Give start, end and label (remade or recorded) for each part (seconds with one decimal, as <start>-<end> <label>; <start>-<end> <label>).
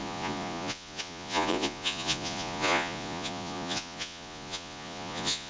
0.0-5.5 remade